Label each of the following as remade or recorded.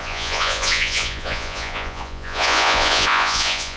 remade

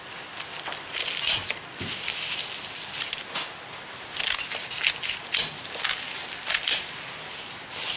recorded